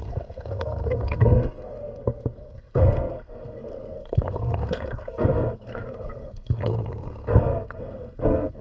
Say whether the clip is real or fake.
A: fake